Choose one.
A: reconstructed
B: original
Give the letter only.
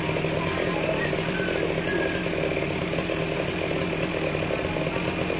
B